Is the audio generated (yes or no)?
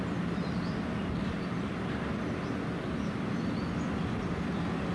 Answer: no